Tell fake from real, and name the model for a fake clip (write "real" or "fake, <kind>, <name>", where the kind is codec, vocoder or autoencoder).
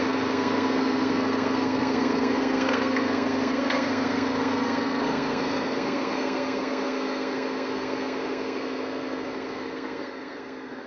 fake, codec, SNAC